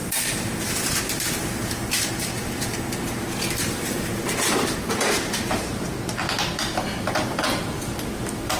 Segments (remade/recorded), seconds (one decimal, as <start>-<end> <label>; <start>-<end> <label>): 0.0-5.0 remade; 5.0-8.6 recorded